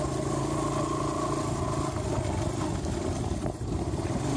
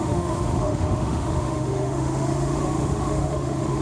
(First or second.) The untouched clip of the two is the first